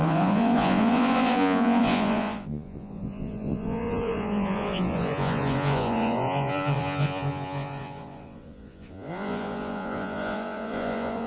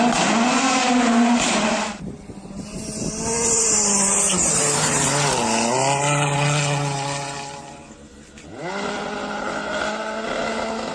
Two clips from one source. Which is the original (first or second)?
second